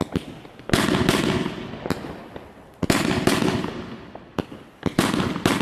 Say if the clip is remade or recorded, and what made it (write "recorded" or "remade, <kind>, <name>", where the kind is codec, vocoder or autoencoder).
recorded